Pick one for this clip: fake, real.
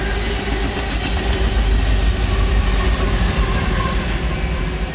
real